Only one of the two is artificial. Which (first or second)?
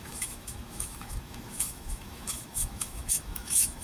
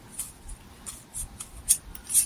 first